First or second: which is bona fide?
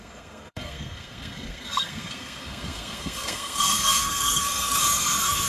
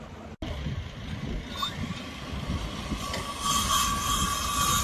second